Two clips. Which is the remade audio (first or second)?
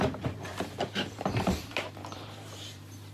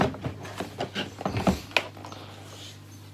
first